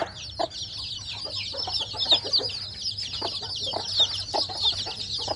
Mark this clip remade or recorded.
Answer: recorded